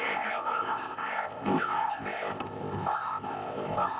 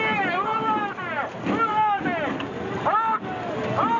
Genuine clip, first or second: second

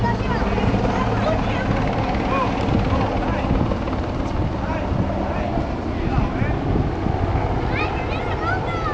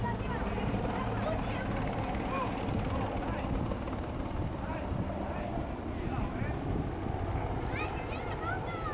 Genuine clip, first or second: first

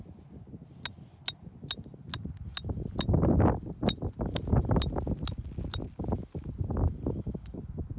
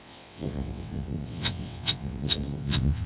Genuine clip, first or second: first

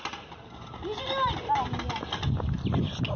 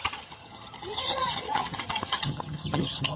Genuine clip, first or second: first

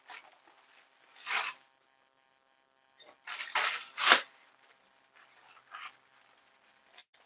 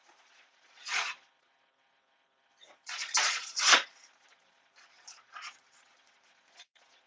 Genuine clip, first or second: first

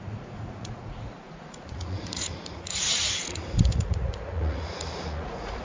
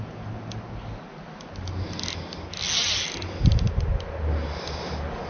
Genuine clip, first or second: second